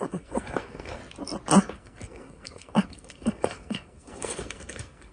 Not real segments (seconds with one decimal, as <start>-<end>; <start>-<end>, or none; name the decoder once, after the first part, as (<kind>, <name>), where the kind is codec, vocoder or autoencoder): 0.0-1.0 (codec, SNAC); 1.6-5.1